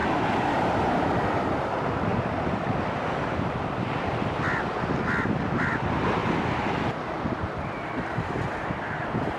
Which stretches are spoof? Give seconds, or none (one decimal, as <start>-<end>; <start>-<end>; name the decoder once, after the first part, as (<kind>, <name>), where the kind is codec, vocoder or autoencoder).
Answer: 0.0-1.7 (vocoder, BigVGAN v2); 2.1-4.6; 6.2-9.4